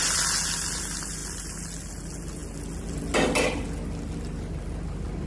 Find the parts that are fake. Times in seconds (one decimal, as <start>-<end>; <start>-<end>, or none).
none

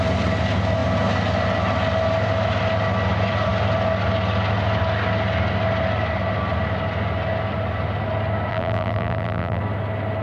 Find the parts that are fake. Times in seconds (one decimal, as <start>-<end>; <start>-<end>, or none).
8.5-9.6

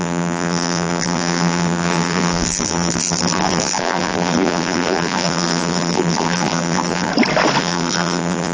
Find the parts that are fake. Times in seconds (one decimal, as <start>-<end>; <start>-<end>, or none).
0.0-7.1; 7.6-8.5

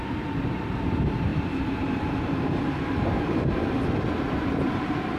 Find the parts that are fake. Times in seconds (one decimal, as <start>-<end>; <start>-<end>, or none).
0.0-3.6; 4.3-5.2

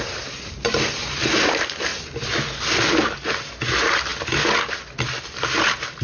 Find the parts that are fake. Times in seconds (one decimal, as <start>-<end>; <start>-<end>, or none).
0.0-1.9; 2.6-6.0

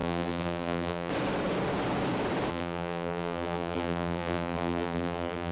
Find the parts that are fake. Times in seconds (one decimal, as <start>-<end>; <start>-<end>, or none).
0.0-1.1; 2.5-5.5

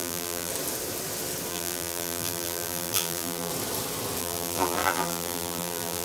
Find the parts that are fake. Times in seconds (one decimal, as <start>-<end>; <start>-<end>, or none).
0.0-0.5; 1.5-3.5; 4.2-6.0

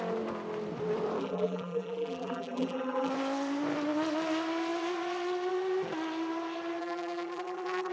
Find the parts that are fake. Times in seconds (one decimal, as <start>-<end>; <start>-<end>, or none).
1.2-3.1; 6.8-7.9